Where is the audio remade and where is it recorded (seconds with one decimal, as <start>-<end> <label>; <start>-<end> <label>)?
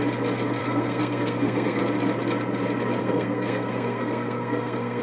0.0-0.6 recorded; 0.6-1.8 remade; 1.8-3.0 recorded; 3.0-5.0 remade